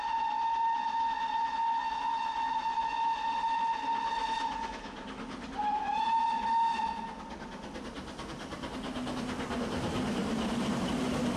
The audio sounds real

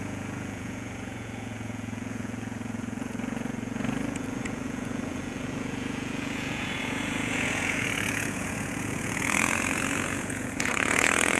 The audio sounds fake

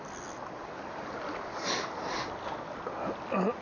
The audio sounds real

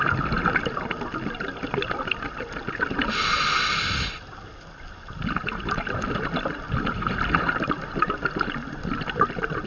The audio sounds real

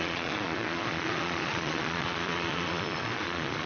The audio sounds fake